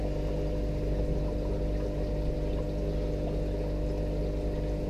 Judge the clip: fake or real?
real